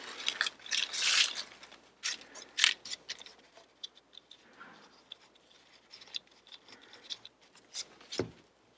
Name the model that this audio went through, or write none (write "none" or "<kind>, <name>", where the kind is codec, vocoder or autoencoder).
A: none